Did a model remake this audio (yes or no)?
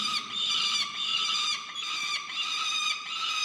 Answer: yes